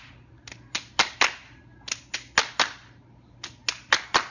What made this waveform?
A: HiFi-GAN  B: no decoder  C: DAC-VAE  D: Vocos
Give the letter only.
B